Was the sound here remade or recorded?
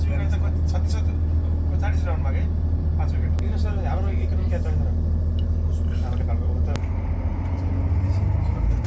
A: recorded